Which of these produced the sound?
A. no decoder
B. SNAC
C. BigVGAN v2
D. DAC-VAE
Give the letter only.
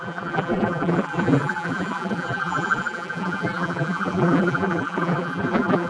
C